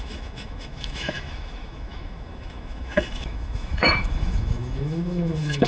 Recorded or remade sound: remade